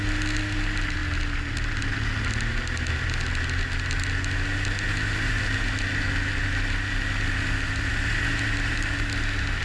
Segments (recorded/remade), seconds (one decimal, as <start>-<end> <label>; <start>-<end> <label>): 0.0-9.6 recorded